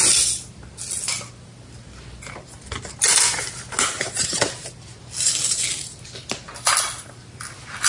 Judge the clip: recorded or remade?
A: recorded